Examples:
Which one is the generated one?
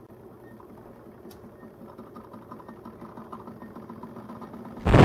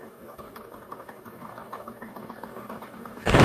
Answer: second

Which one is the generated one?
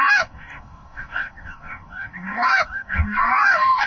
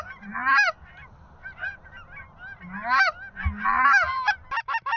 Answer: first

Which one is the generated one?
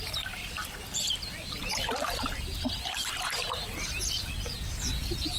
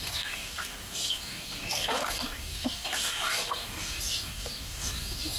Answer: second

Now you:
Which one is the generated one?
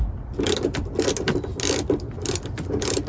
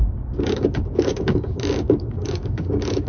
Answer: second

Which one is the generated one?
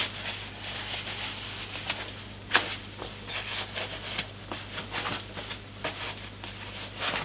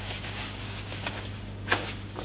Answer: second